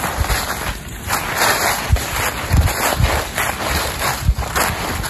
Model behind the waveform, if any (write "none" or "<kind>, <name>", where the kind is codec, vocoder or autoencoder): none